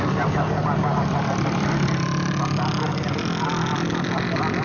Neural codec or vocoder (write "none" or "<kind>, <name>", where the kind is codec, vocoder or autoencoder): none